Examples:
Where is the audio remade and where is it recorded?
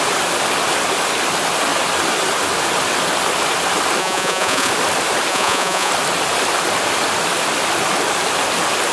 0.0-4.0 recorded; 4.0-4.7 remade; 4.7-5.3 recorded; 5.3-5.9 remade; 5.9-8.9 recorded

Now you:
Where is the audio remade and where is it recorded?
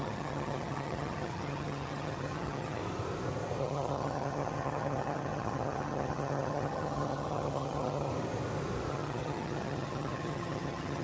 0.0-2.8 remade; 2.8-3.6 recorded; 3.6-8.1 remade; 8.1-8.9 recorded; 8.9-11.0 remade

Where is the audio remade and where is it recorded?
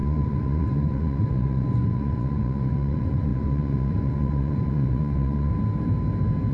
0.0-5.5 remade; 5.5-6.5 recorded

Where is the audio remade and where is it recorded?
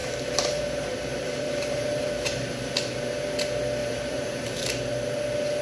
0.0-2.1 remade; 2.1-3.8 recorded; 3.8-4.7 remade; 4.7-5.6 recorded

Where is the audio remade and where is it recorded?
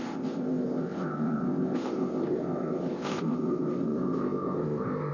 0.0-5.1 remade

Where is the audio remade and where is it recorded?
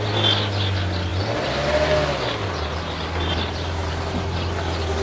0.0-3.8 recorded; 3.8-4.5 remade; 4.5-5.0 recorded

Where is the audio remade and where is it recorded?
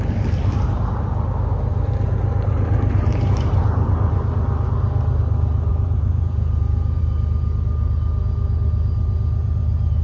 0.0-5.7 recorded; 5.7-7.0 remade; 7.0-10.0 recorded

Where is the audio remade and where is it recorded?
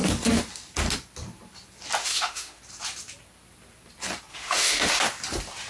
0.0-2.0 recorded; 2.0-2.6 remade; 2.6-4.3 recorded; 4.3-5.0 remade; 5.0-5.7 recorded